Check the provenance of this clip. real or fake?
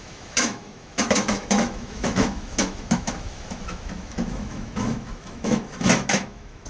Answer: fake